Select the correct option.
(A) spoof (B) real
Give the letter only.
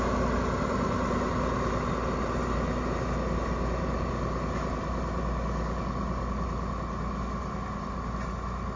B